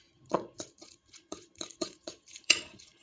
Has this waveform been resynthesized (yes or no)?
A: yes